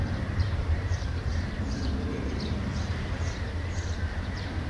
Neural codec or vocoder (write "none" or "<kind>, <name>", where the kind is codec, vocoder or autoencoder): vocoder, BigVGAN v2